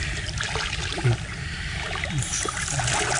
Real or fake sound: real